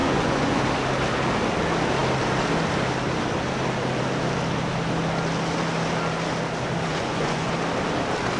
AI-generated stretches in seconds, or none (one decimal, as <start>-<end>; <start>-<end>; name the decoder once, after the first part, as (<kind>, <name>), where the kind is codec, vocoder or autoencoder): 0.0-0.6 (vocoder, Vocos); 6.9-7.5